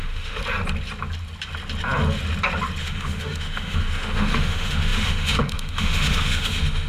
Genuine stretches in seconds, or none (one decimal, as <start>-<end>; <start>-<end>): 0.4-2.8

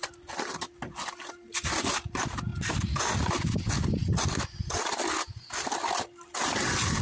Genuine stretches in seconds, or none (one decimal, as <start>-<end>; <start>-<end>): 0.0-7.0

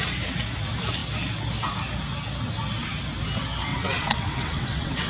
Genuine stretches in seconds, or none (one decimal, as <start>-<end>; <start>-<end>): 0.0-3.7

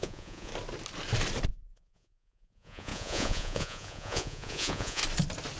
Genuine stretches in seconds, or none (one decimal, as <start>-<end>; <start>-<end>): 0.5-1.5; 5.0-5.6